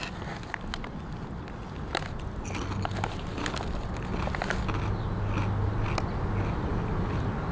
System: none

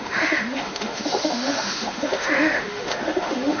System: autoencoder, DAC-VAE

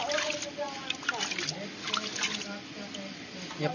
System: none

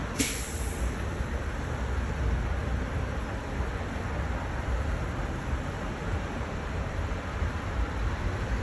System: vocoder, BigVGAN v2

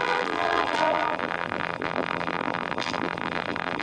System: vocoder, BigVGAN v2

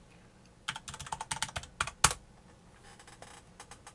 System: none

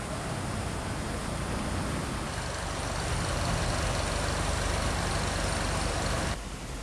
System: none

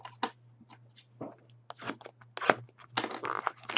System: none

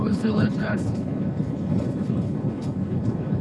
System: codec, HILCodec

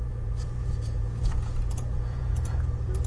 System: vocoder, Vocos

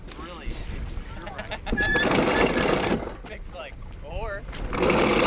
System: none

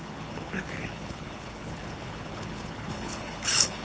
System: codec, HILCodec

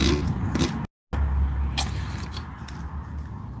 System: none